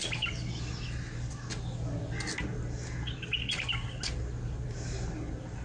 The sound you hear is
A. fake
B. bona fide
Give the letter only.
B